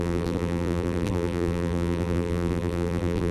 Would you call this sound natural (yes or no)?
no